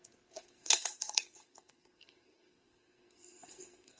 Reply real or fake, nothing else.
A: fake